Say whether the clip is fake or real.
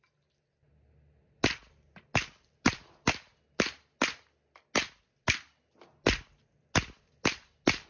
real